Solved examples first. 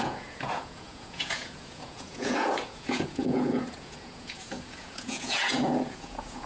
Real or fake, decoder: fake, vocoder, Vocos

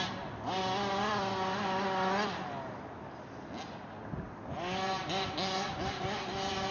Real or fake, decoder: real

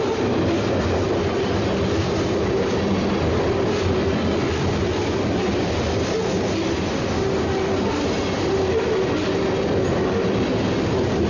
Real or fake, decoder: real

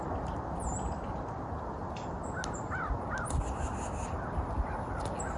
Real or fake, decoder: real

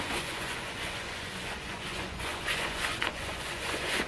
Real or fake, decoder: fake, vocoder, Vocos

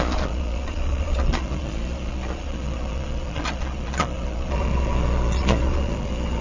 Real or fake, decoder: fake, vocoder, Vocos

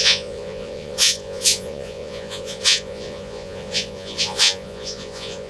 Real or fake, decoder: fake, vocoder, Vocos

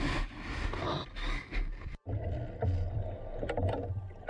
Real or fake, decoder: real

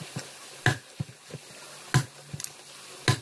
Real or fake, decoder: real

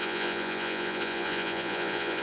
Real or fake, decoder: fake, vocoder, Vocos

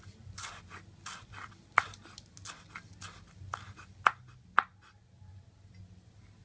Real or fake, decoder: real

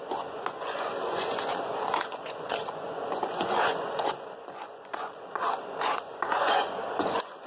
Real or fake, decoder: fake, vocoder, Vocos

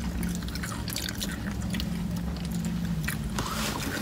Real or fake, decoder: real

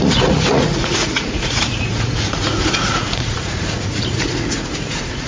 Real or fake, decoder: fake, vocoder, Vocos